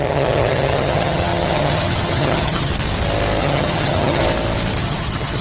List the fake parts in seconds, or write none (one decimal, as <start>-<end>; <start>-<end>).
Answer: 0.0-2.7; 3.4-4.2; 4.8-5.4